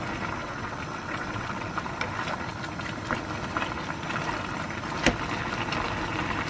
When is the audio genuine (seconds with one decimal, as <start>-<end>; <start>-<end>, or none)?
0.0-0.4; 1.7-6.5